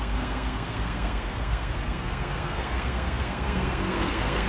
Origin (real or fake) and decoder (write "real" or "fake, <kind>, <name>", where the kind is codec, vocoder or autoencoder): fake, codec, SNAC